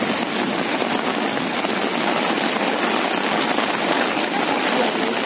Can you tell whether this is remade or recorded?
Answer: recorded